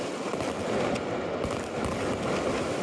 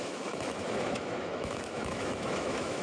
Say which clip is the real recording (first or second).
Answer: first